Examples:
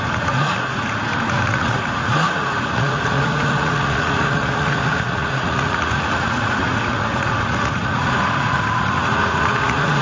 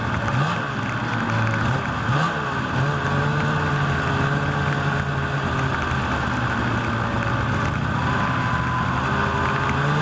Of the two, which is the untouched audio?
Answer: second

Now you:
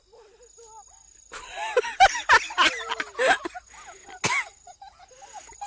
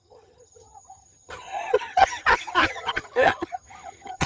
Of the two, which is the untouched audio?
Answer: first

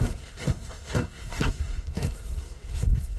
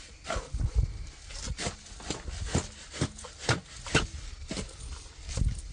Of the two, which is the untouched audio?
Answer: second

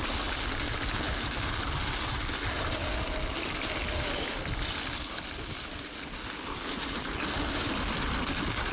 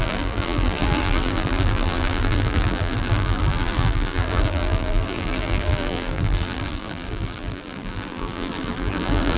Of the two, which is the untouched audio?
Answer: first